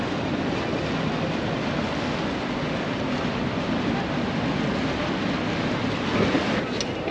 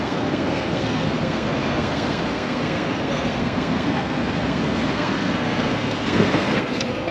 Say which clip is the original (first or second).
first